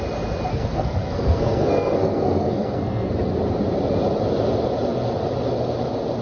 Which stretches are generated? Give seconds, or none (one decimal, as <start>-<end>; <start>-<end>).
0.5-3.1